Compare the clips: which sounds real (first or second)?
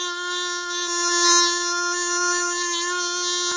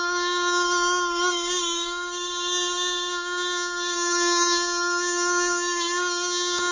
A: first